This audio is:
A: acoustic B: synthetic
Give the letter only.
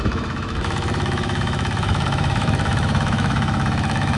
B